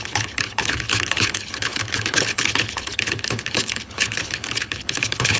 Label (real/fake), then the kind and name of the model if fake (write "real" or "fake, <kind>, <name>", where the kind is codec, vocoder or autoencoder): fake, codec, HILCodec